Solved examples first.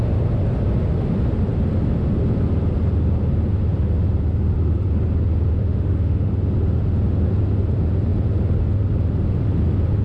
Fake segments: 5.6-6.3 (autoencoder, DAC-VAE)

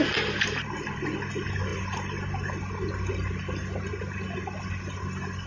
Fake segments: none